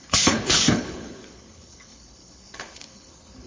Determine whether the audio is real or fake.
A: fake